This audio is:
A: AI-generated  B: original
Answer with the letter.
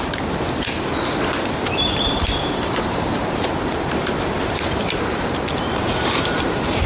A